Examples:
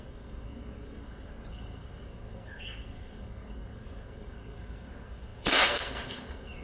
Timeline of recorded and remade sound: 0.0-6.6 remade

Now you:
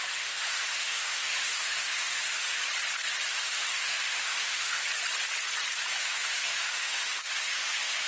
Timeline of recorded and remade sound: 0.0-2.6 remade; 2.6-3.3 recorded; 3.3-4.8 remade; 4.8-5.9 recorded; 5.9-8.1 remade

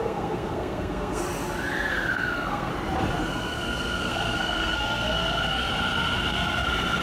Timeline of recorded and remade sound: 0.0-1.2 remade; 1.2-1.9 recorded; 1.9-2.7 remade; 2.7-3.3 recorded; 3.3-5.7 remade; 5.7-6.3 recorded; 6.3-7.0 remade

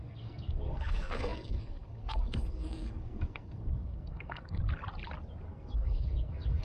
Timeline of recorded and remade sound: 0.0-4.6 remade; 4.6-5.5 recorded; 5.5-6.6 remade